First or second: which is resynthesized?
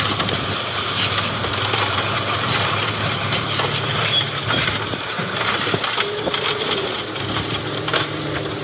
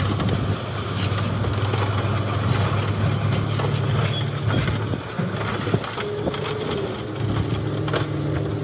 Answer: first